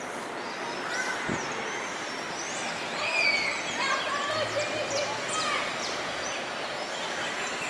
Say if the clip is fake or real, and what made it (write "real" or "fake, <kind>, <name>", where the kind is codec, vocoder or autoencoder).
real